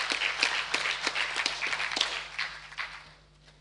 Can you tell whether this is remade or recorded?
recorded